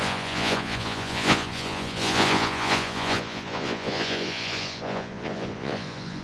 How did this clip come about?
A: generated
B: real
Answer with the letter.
A